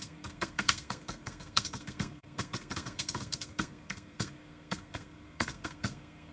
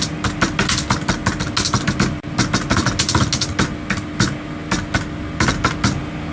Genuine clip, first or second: second